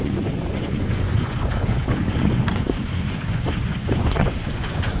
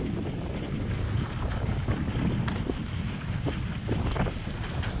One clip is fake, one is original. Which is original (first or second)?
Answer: second